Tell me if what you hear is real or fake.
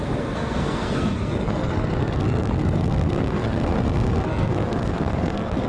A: fake